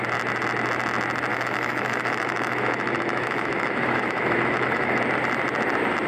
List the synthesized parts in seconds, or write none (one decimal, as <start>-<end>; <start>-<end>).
1.3-5.0